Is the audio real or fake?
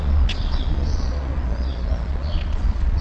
fake